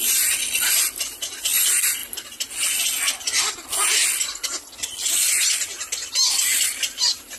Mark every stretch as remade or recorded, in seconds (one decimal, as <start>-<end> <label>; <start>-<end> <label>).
0.0-7.4 recorded